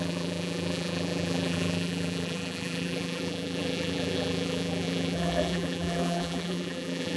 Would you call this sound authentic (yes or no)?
no